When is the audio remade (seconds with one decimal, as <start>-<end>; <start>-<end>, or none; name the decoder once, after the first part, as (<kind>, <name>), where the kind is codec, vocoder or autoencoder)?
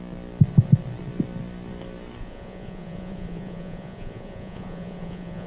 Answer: 2.2-5.5 (vocoder, Vocos)